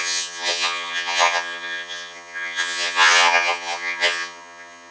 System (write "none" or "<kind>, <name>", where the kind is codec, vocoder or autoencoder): vocoder, HiFi-GAN